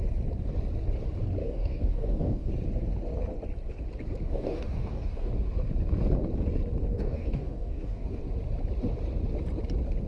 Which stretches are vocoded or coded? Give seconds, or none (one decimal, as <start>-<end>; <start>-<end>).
1.4-2.5; 4.3-5.3; 6.9-8.2